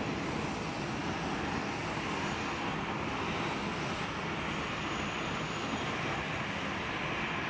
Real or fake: real